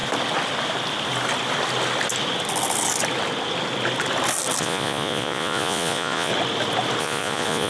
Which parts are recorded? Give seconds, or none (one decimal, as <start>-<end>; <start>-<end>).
0.0-4.6; 6.3-7.0